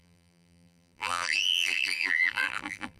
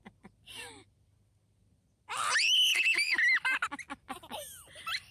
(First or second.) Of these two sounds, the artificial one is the first